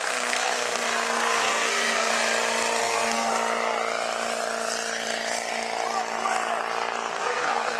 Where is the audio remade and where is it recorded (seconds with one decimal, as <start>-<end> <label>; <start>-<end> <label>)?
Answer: 0.0-2.1 remade; 2.1-2.8 recorded; 2.8-3.3 remade; 3.3-7.1 recorded; 7.1-7.8 remade